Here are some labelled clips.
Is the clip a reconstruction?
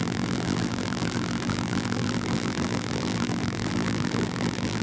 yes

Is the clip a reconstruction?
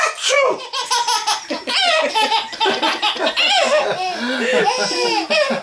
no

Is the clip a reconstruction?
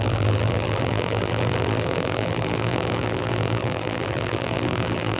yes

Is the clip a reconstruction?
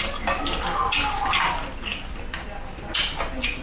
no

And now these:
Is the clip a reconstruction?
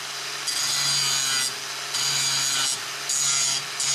no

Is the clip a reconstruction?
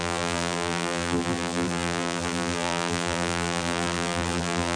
yes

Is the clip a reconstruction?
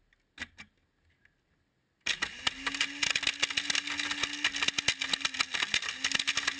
no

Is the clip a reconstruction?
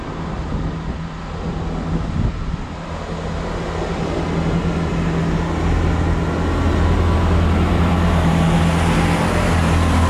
no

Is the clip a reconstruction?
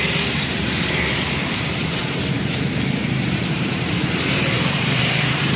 yes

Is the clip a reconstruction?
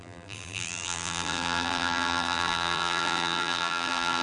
yes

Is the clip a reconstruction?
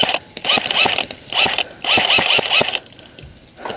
yes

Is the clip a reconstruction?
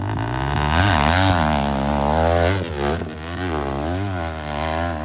no